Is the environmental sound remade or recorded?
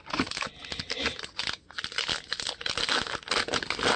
recorded